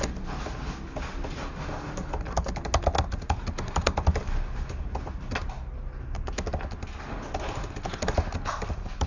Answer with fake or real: real